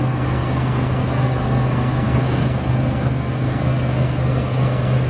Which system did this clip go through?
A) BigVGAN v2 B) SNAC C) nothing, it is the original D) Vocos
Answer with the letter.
B